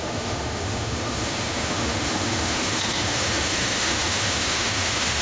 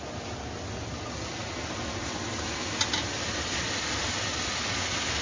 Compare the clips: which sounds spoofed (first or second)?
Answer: first